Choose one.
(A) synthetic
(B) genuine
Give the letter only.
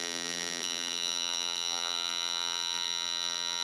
A